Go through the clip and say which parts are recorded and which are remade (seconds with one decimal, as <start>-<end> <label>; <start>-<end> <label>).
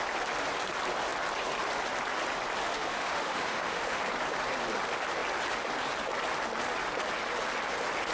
0.0-2.7 recorded; 2.7-4.0 remade; 4.0-8.1 recorded